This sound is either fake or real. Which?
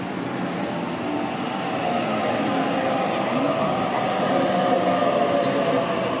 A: real